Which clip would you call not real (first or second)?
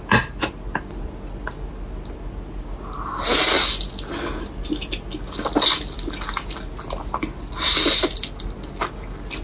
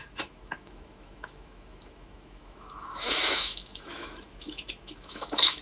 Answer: second